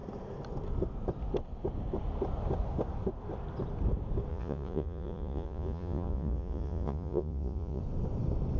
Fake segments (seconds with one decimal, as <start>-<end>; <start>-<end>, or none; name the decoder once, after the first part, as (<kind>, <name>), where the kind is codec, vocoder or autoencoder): 4.3-7.8 (vocoder, Vocos)